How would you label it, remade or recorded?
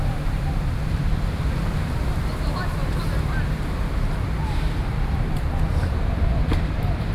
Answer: remade